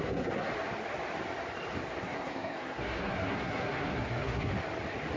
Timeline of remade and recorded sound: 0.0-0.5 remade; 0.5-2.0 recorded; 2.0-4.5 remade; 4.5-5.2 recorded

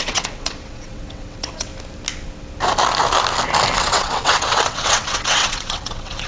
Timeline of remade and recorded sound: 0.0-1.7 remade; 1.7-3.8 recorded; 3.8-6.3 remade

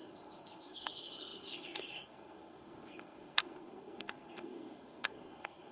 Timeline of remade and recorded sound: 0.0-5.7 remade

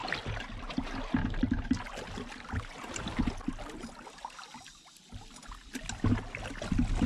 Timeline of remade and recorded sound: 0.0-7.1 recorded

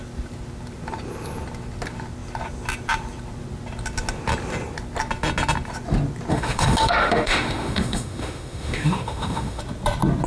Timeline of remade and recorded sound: 0.0-6.3 recorded; 6.3-9.6 remade; 9.6-10.3 recorded

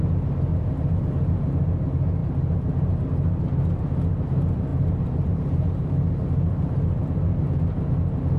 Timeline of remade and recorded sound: 0.0-0.5 recorded; 0.5-1.0 remade; 1.0-2.2 recorded; 2.2-2.9 remade; 2.9-4.7 recorded; 4.7-7.9 remade; 7.9-8.4 recorded

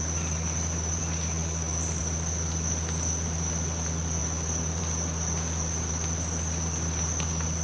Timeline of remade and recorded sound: 0.0-7.6 recorded

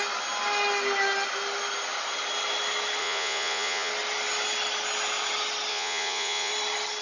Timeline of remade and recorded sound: 0.0-3.0 recorded; 3.0-3.9 remade; 3.9-5.7 recorded; 5.7-6.5 remade; 6.5-7.0 recorded